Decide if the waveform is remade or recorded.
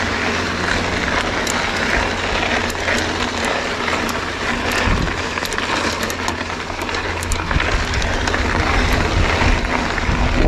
recorded